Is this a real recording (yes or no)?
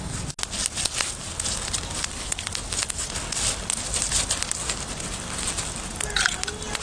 yes